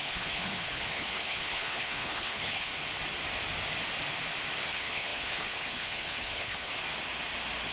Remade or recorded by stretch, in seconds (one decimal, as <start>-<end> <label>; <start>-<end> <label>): 0.0-2.7 remade; 2.7-4.6 recorded; 4.6-6.7 remade; 6.7-7.7 recorded